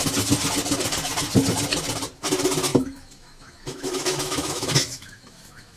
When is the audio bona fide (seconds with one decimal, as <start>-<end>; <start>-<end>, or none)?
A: 0.0-2.7